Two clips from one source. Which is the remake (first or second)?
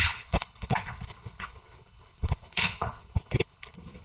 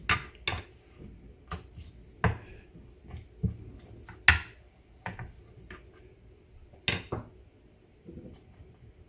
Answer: first